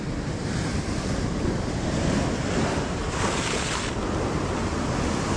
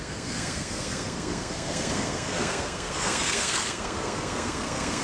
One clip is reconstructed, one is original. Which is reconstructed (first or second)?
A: second